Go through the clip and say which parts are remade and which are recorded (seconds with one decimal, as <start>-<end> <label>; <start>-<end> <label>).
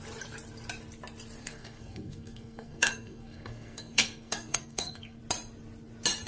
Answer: 0.0-1.4 recorded; 1.4-5.2 remade; 5.2-6.3 recorded